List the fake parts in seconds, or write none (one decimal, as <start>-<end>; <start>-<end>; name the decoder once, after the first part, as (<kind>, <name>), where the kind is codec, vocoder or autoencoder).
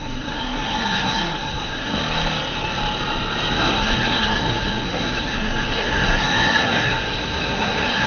0.0-2.0 (codec, SNAC); 3.6-8.1